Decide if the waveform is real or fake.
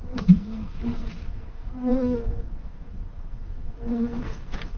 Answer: fake